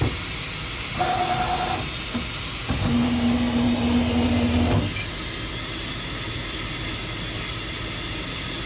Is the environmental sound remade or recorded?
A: recorded